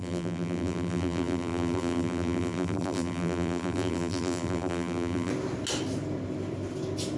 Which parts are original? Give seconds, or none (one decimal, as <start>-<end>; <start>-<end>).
5.3-7.2